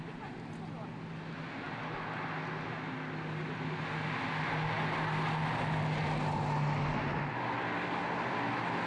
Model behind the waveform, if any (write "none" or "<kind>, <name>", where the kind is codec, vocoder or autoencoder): none